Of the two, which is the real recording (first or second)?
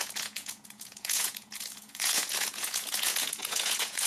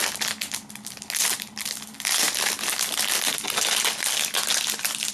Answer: second